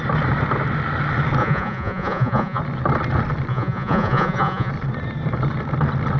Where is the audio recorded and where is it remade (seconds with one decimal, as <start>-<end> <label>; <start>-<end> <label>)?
0.0-1.4 recorded; 1.4-2.6 remade; 2.6-3.5 recorded; 3.5-4.7 remade; 4.7-6.2 recorded